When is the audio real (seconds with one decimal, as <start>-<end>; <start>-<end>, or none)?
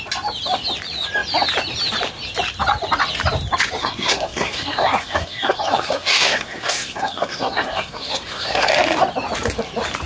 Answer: 0.0-3.8; 8.7-10.1